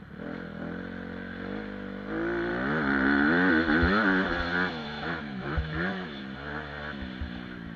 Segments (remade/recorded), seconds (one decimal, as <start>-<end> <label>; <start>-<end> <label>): 0.0-2.5 recorded; 2.5-3.5 remade; 3.5-4.8 recorded; 4.8-6.2 remade; 6.2-7.8 recorded

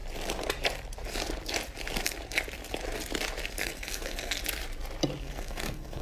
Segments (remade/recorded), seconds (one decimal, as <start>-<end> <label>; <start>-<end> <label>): 0.0-3.6 recorded; 3.6-4.4 remade; 4.4-5.2 recorded; 5.2-6.0 remade

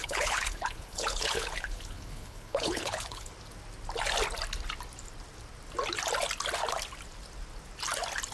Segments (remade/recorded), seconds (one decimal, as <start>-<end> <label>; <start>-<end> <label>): 0.0-3.3 remade; 3.3-8.3 recorded